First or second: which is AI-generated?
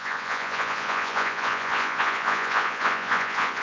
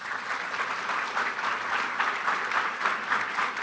first